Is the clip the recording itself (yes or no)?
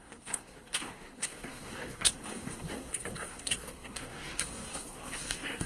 no